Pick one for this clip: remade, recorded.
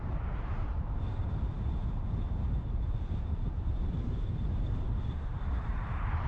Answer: remade